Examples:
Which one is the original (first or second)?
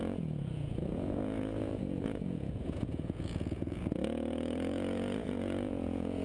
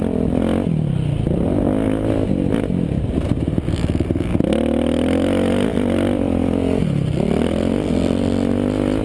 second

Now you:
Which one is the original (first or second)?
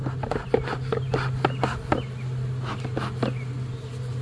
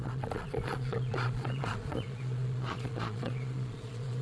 first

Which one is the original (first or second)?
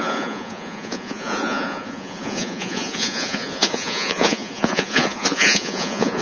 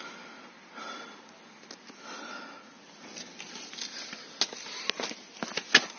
second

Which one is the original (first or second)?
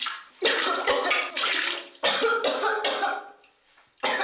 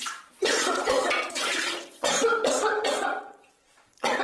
first